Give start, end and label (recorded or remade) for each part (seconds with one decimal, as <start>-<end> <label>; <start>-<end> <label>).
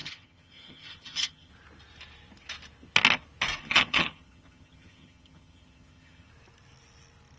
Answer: 0.0-1.5 remade; 1.5-3.6 recorded; 3.6-6.3 remade; 6.3-7.4 recorded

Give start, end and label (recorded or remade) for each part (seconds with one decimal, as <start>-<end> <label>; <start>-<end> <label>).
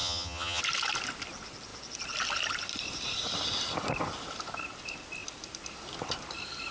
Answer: 0.0-0.6 remade; 0.6-6.7 recorded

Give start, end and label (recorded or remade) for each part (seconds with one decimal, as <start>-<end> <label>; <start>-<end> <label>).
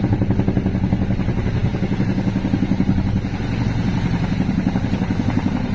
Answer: 0.0-5.7 recorded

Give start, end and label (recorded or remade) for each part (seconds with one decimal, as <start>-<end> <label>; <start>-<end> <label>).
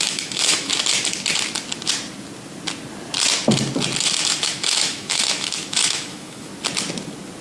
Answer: 0.0-0.7 remade; 0.7-4.0 recorded; 4.0-6.5 remade; 6.5-7.4 recorded